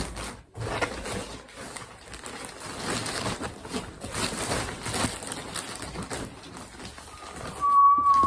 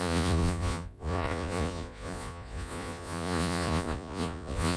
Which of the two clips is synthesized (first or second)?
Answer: second